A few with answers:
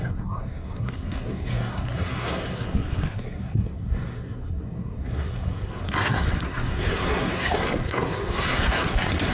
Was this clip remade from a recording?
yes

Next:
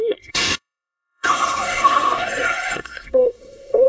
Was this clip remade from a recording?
yes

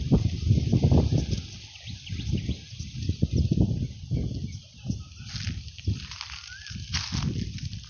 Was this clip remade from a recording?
no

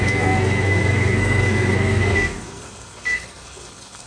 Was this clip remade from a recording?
yes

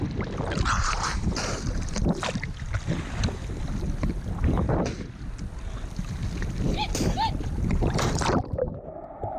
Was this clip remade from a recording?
no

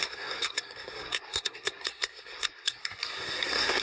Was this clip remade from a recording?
yes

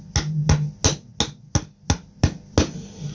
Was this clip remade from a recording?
no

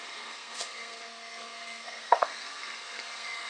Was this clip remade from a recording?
yes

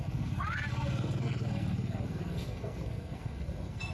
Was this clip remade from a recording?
yes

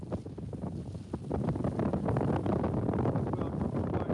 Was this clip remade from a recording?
no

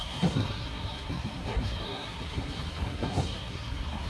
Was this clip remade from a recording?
yes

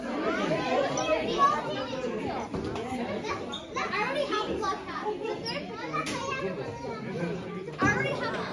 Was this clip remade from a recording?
no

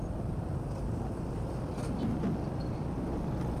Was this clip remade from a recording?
no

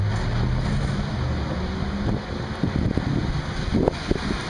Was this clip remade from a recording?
no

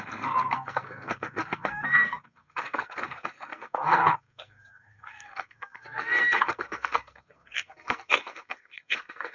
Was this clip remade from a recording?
yes